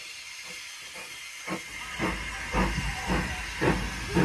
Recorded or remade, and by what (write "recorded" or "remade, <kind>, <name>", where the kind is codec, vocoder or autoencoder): recorded